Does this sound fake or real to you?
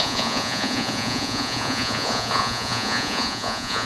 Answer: fake